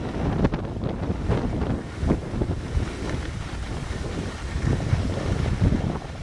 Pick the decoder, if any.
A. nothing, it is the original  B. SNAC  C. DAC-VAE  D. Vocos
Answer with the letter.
A